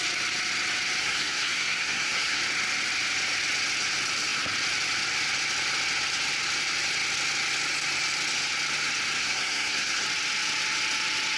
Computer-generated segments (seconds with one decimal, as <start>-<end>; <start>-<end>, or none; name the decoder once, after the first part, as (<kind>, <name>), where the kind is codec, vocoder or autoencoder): 1.0-2.4 (codec, SNAC); 9.2-10.0